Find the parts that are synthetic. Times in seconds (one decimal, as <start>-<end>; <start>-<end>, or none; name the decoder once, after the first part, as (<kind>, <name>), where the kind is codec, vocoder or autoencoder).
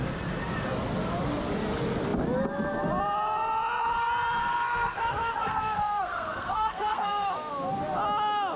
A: 4.4-7.5 (codec, SNAC)